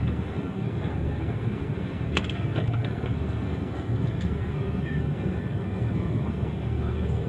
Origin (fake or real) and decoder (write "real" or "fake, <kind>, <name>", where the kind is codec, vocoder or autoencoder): fake, codec, SNAC